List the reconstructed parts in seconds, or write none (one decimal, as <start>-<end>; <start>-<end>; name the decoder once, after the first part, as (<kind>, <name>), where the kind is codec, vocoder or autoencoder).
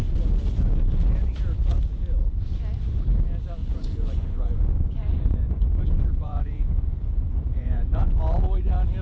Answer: 3.6-8.1 (vocoder, Vocos)